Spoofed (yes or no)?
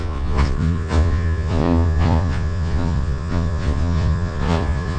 yes